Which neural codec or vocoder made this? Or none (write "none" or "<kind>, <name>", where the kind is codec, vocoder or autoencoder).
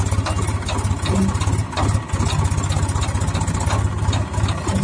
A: none